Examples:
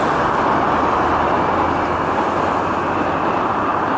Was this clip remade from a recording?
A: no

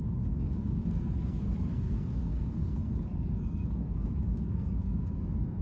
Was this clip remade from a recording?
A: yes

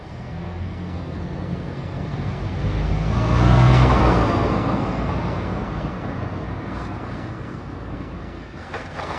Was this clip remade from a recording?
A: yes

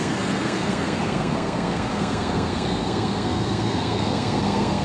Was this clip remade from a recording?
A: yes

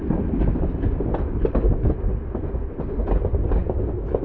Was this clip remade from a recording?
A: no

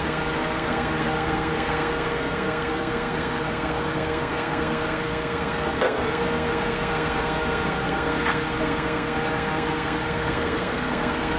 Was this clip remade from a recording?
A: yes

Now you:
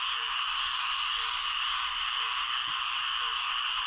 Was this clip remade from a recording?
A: no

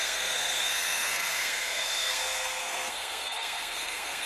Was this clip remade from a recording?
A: yes